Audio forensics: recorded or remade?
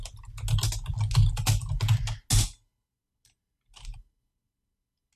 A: recorded